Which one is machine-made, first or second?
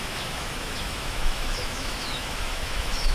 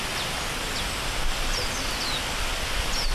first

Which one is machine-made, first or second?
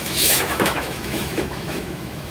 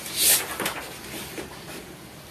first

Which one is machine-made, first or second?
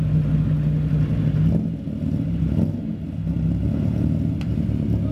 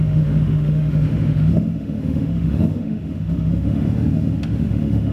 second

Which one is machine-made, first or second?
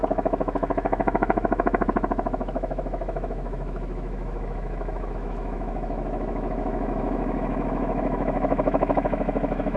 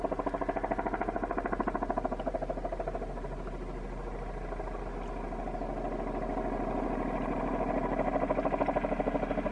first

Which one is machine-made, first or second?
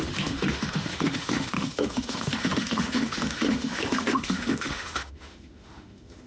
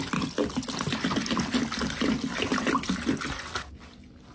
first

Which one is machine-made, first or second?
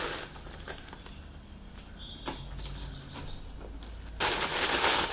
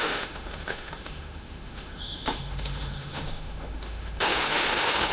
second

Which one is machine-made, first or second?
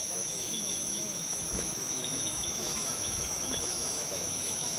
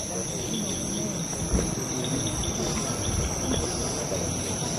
first